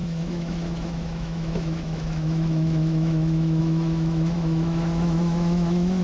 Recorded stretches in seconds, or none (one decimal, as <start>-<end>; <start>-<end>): none